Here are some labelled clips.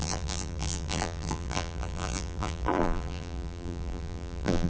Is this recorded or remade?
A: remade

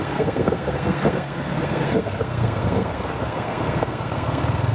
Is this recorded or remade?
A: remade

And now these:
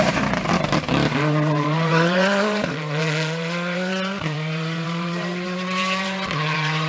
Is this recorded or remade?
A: remade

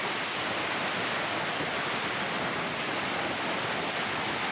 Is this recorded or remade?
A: recorded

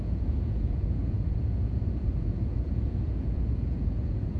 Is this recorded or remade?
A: remade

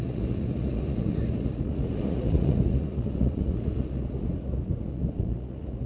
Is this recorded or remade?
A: remade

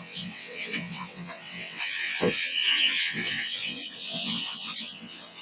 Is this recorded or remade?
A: remade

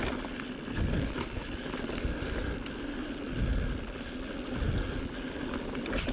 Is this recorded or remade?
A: recorded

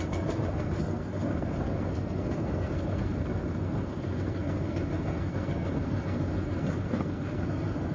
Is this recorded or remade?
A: remade